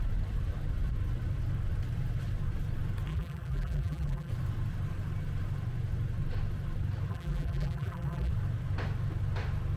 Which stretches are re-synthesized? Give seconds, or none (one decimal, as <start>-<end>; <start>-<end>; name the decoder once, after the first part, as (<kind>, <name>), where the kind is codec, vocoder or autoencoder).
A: 3.1-4.3 (vocoder, BigVGAN v2); 7.1-8.3